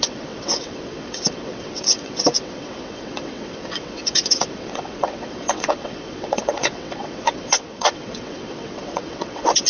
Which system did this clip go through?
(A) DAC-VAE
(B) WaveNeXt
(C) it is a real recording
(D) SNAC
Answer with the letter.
B